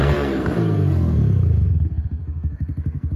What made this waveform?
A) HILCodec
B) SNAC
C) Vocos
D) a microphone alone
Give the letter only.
B